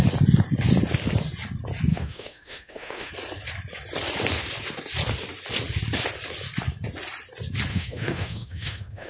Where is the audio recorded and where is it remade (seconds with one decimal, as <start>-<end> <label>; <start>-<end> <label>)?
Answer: 0.0-1.9 recorded; 1.9-3.1 remade; 3.1-7.7 recorded; 7.7-9.1 remade